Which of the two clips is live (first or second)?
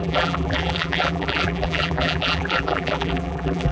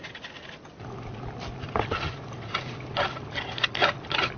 second